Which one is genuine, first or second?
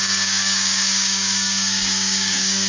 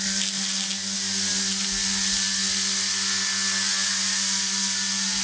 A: second